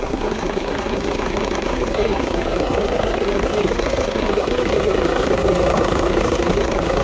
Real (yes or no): no